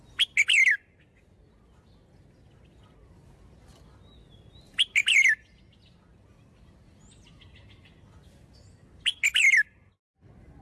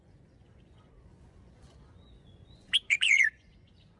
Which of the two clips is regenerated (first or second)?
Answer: second